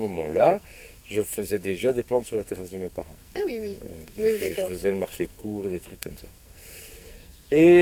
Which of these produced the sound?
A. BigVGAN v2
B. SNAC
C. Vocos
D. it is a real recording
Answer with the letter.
B